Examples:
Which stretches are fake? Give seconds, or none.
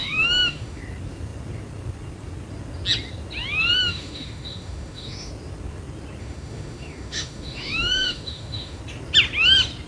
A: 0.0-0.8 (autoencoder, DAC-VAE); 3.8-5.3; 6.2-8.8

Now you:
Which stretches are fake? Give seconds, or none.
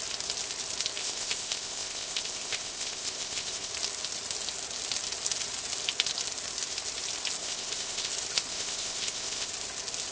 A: 1.0-3.7 (codec, ZipCodec); 7.4-8.1; 8.5-9.5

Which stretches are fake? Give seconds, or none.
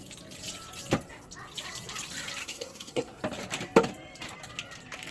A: 2.4-3.2 (codec, SNAC)